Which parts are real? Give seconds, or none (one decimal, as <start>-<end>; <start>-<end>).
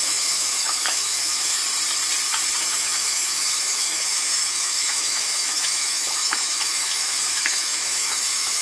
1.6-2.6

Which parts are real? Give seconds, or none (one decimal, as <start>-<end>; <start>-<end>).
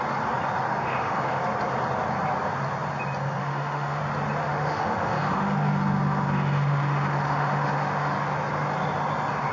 0.0-0.7; 1.4-3.4; 4.0-4.4; 8.1-9.5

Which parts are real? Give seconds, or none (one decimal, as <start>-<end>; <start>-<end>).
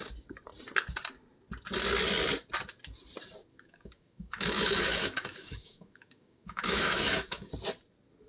0.0-3.5; 7.5-8.3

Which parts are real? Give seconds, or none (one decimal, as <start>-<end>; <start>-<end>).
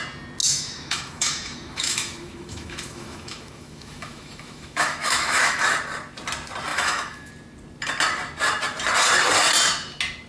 0.0-0.4; 5.6-6.7; 7.3-10.3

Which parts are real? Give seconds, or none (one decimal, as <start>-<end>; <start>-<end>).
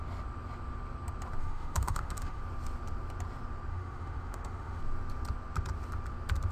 0.0-1.4; 2.4-3.7; 4.8-6.5